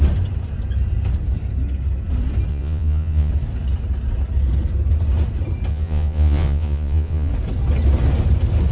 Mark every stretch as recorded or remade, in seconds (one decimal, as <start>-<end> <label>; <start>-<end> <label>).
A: 0.0-2.5 recorded; 2.5-3.3 remade; 3.3-5.7 recorded; 5.7-7.3 remade; 7.3-8.7 recorded